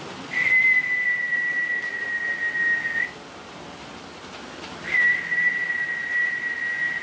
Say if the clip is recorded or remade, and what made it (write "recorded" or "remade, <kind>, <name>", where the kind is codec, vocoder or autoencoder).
recorded